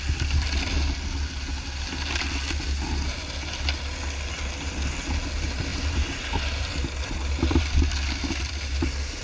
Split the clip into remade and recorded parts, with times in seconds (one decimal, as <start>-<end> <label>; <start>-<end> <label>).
0.0-5.7 recorded; 5.7-7.6 remade; 7.6-9.2 recorded